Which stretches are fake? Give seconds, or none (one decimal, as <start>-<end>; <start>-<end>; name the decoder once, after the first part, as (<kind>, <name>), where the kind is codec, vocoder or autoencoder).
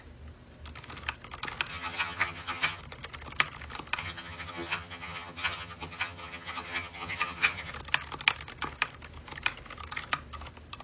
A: 1.7-2.8 (vocoder, HiFi-GAN); 4.0-7.7